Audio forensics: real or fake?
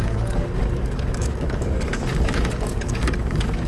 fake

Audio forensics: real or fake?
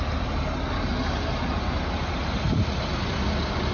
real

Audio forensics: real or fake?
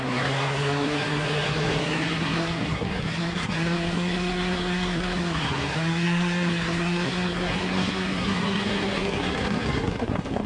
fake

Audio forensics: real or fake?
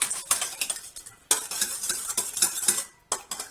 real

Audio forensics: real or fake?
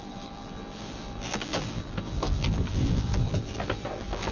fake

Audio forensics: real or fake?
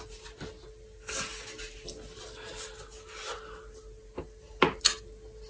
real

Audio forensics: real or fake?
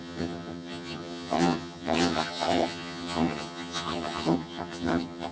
fake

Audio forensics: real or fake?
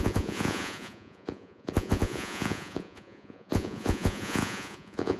fake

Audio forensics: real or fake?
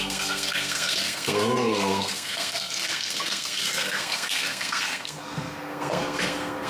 fake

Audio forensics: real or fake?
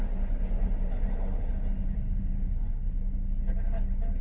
real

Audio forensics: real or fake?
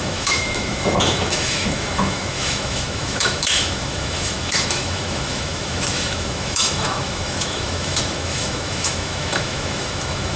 fake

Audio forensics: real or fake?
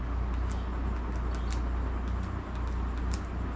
real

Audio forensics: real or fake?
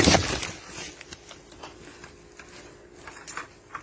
real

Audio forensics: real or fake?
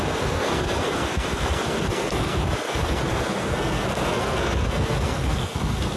fake